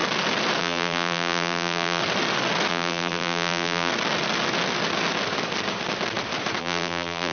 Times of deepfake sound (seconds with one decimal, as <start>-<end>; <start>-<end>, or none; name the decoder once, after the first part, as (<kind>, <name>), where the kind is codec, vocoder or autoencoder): 0.6-2.0 (vocoder, BigVGAN v2); 2.7-3.9; 6.6-7.3